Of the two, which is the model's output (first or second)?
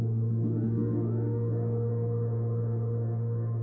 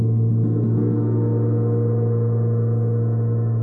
first